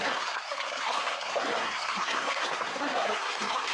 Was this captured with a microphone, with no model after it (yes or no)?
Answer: no